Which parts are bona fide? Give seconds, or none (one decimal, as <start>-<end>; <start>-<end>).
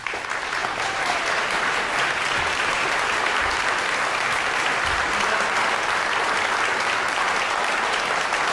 0.0-0.6; 3.5-8.5